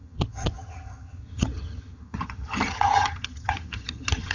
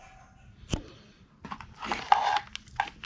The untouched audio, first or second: second